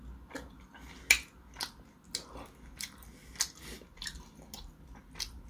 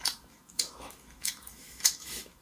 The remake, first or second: second